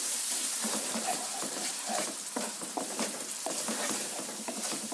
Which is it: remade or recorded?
remade